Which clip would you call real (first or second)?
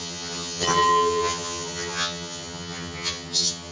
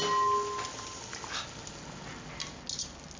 second